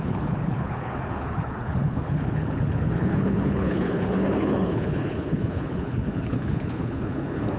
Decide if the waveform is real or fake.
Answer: fake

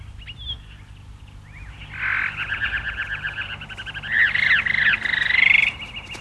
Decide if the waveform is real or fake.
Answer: real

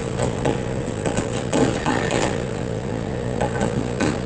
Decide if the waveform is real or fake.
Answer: fake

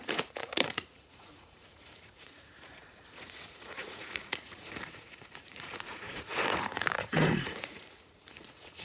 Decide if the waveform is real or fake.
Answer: fake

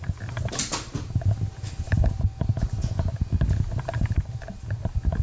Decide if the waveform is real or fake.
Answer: real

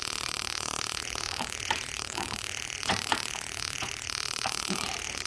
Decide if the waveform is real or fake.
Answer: fake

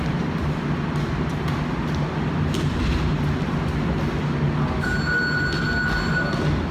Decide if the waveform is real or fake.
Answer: real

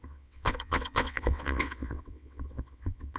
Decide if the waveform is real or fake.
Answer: fake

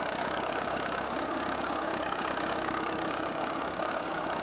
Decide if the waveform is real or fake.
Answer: fake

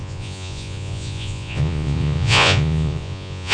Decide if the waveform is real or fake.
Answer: fake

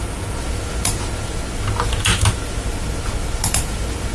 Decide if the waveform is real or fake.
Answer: real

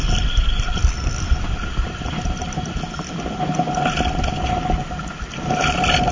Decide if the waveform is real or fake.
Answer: real